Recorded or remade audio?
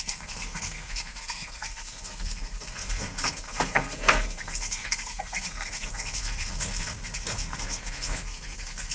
remade